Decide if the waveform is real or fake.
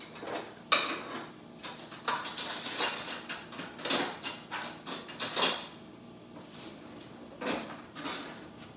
real